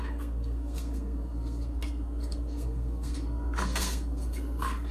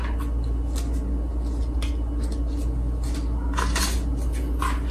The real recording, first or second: second